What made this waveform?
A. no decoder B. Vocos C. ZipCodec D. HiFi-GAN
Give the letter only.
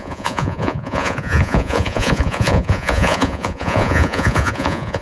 B